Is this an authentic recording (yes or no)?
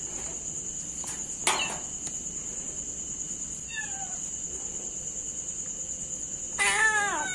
yes